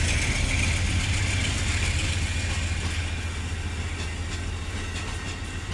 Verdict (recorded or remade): recorded